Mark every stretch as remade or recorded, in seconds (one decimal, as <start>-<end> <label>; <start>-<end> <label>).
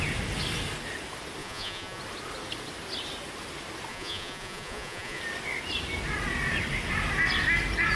0.0-1.4 recorded; 1.4-2.0 remade; 2.0-3.9 recorded; 3.9-5.2 remade; 5.2-8.0 recorded